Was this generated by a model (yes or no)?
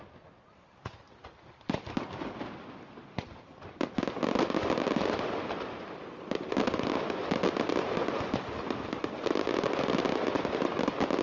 no